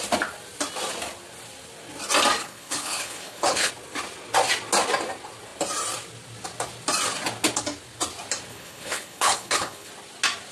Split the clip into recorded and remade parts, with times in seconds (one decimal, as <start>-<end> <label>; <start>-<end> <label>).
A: 0.0-2.4 recorded; 2.4-3.7 remade; 3.7-8.5 recorded; 8.5-9.9 remade; 9.9-10.5 recorded